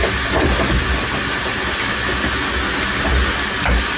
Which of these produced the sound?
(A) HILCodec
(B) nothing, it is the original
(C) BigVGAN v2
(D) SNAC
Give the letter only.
B